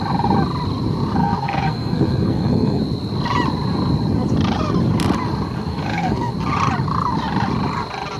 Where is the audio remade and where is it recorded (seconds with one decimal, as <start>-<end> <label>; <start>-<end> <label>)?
0.0-1.2 recorded; 1.2-2.8 remade; 2.8-5.7 recorded; 5.7-6.3 remade; 6.3-8.2 recorded